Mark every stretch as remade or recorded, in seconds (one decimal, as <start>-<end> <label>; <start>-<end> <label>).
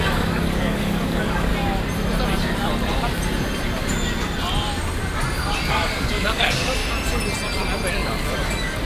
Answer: 0.0-1.5 remade; 1.5-5.7 recorded; 5.7-6.8 remade; 6.8-7.9 recorded; 7.9-8.8 remade